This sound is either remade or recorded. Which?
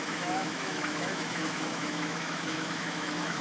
remade